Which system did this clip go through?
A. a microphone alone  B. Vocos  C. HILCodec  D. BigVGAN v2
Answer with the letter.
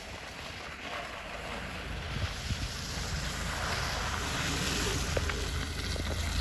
A